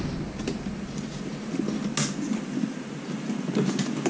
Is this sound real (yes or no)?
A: yes